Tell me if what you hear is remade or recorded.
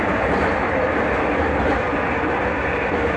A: recorded